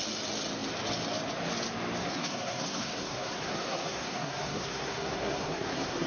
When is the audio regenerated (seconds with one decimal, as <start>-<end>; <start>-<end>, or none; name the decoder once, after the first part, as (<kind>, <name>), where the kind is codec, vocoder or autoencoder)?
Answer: 2.0-6.1 (codec, SNAC)

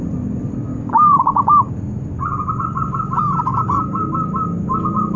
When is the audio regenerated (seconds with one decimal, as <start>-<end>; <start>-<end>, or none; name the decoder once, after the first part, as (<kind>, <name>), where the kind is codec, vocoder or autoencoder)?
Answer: 0.7-1.7 (codec, DAC); 3.5-4.1